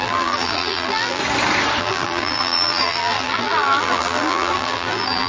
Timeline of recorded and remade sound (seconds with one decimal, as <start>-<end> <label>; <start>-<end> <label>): 0.0-1.2 remade; 1.2-1.8 recorded; 1.8-5.3 remade